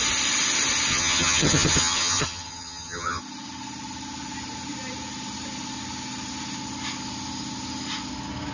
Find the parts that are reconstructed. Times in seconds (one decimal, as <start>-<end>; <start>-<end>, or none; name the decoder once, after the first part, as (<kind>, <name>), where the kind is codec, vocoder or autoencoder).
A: 0.9-3.2 (vocoder, HiFi-GAN)